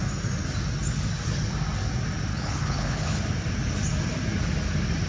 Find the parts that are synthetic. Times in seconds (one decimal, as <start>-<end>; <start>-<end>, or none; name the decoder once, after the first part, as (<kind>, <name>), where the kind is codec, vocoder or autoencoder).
2.3-3.2 (codec, HILCodec)